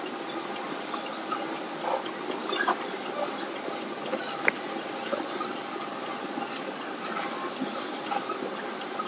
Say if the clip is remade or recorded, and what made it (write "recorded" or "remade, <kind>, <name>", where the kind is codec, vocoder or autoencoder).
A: recorded